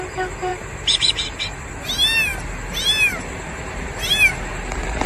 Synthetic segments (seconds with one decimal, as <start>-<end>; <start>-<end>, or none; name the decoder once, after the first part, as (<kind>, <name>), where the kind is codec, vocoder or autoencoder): 0.5-1.8 (vocoder, BigVGAN v2)